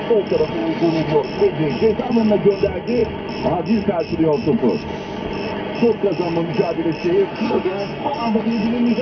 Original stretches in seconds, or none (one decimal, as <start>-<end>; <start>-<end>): 0.0-7.3; 8.4-9.0